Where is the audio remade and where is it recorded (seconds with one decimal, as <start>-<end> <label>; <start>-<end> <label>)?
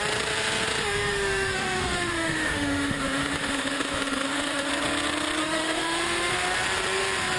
0.0-0.8 recorded; 0.8-4.7 remade; 4.7-5.4 recorded; 5.4-6.3 remade; 6.3-7.4 recorded